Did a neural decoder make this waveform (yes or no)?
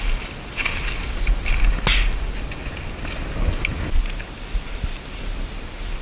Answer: no